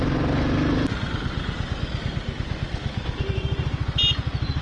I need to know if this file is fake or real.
real